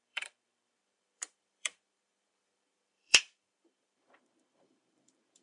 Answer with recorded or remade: remade